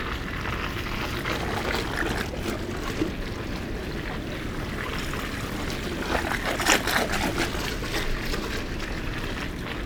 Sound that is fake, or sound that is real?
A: real